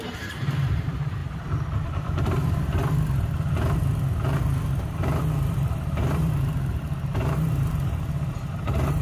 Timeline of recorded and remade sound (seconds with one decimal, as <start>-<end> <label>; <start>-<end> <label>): 0.0-2.8 remade; 2.8-5.5 recorded; 5.5-9.0 remade